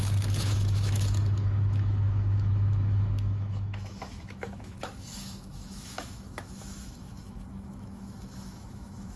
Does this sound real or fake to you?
fake